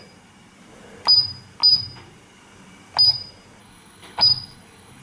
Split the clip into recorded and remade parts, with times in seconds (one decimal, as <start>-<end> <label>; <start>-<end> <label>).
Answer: 0.0-3.6 recorded; 3.6-5.0 remade